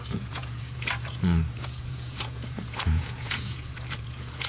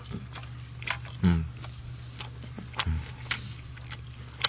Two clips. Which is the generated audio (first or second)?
first